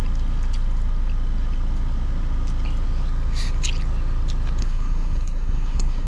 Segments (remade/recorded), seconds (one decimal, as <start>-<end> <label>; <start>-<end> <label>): 0.0-4.6 recorded; 4.6-6.1 remade